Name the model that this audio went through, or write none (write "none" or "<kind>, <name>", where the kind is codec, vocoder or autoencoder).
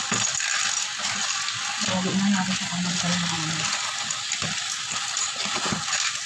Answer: none